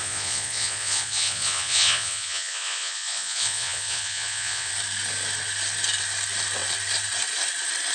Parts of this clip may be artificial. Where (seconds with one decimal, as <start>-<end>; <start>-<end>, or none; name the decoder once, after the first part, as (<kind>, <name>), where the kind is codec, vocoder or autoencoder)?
0.0-4.7 (vocoder, Vocos)